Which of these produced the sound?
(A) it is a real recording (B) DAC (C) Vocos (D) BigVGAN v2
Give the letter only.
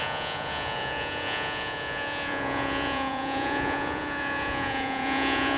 C